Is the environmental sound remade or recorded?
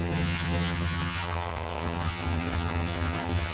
remade